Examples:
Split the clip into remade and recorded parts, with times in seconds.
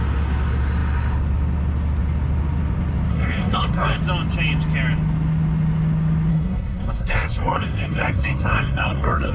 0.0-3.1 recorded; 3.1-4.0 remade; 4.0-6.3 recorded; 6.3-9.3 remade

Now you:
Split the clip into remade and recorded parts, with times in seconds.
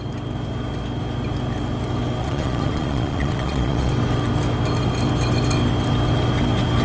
0.0-2.2 recorded; 2.2-3.9 remade; 3.9-6.8 recorded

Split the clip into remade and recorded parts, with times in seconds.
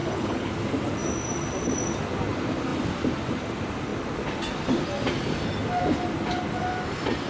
0.0-0.5 remade; 0.5-7.3 recorded